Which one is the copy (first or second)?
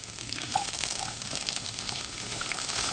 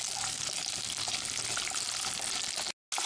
first